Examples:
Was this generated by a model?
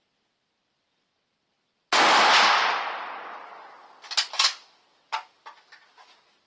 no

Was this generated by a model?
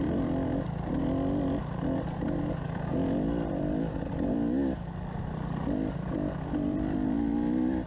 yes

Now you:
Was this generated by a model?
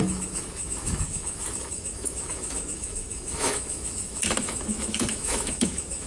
yes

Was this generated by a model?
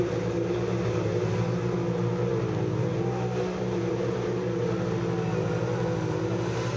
no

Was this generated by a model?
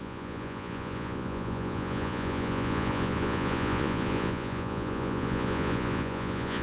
yes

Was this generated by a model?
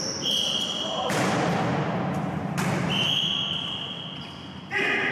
no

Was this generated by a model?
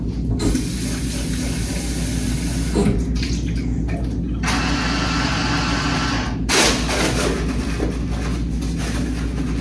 no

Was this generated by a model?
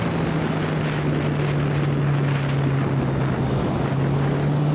no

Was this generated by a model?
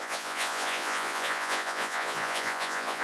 yes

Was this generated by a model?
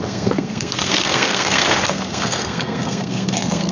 yes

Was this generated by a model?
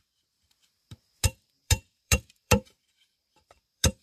yes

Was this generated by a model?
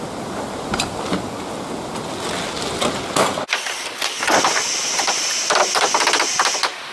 no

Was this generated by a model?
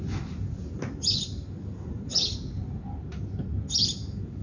no